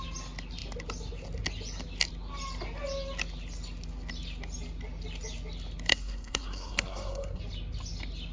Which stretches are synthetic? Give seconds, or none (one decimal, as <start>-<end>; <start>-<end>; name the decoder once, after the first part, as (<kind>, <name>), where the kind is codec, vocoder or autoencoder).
5.9-7.4 (codec, SNAC)